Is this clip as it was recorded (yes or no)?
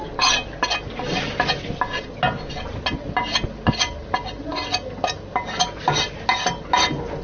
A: yes